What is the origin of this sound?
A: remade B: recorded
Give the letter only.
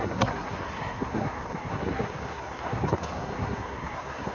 A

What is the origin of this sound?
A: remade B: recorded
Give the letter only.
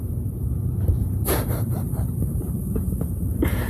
A